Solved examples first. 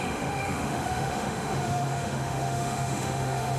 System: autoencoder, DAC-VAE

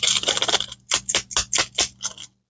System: none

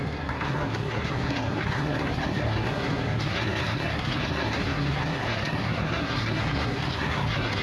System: codec, SNAC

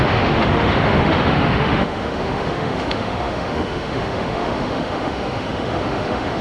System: autoencoder, DAC-VAE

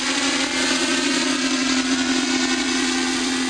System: vocoder, Vocos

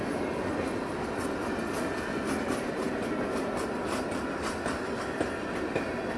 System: none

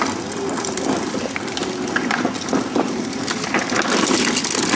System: none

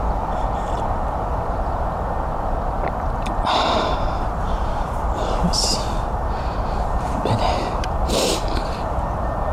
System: vocoder, BigVGAN v2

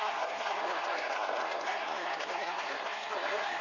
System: codec, SNAC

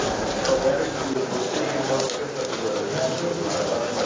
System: none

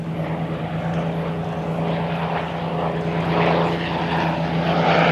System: none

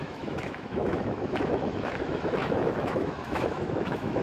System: autoencoder, DAC-VAE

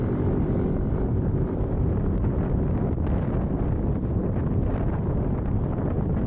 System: none